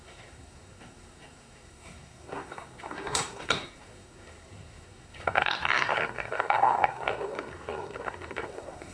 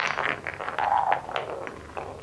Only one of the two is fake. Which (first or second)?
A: first